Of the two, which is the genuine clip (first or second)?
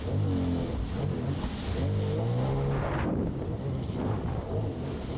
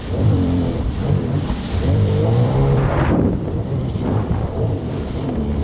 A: first